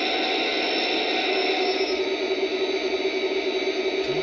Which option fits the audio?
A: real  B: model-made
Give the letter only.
A